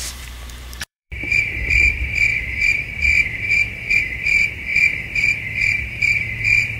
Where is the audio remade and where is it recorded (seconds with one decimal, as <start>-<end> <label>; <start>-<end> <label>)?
0.0-4.7 remade; 4.7-5.3 recorded; 5.3-6.8 remade